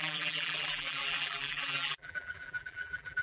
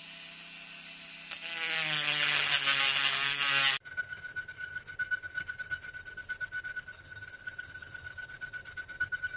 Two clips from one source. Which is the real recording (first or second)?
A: second